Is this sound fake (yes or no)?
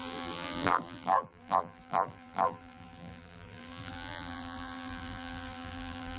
yes